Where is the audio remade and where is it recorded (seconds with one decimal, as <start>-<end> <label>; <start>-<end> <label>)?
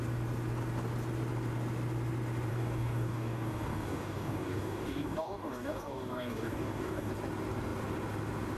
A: 0.0-2.5 recorded; 2.5-7.1 remade; 7.1-8.6 recorded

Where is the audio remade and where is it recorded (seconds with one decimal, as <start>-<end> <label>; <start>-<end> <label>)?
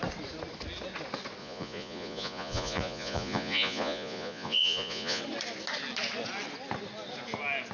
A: 0.0-1.4 recorded; 1.4-5.2 remade; 5.2-7.7 recorded